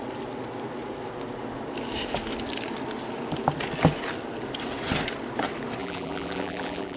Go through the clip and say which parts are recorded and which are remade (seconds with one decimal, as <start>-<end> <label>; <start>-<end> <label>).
0.0-5.8 recorded; 5.8-7.0 remade